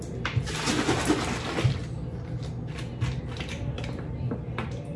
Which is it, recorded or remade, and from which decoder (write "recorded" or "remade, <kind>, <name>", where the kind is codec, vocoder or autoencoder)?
recorded